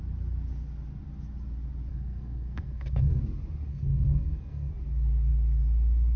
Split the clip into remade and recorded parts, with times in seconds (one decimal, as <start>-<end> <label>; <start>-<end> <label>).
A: 0.0-1.9 recorded; 1.9-3.2 remade; 3.2-3.7 recorded; 3.7-4.7 remade; 4.7-6.2 recorded